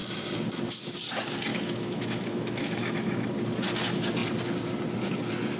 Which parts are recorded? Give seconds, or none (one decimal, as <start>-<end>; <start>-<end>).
0.0-1.5; 3.3-5.6

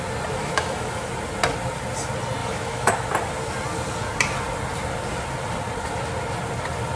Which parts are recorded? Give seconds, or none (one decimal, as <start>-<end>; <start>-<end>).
0.0-0.4; 1.1-2.4; 2.9-7.0

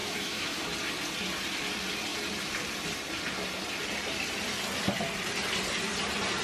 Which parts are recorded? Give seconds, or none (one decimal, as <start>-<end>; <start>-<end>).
0.6-6.4

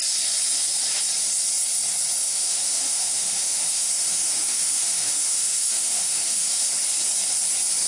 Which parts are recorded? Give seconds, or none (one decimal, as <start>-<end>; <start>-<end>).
0.0-2.2; 6.7-7.9

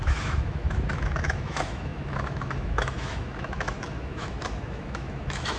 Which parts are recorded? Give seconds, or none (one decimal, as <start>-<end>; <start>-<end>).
none